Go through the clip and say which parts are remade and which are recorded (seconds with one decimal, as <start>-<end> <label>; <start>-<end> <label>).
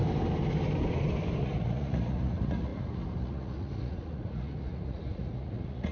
0.0-1.4 recorded; 1.4-5.9 remade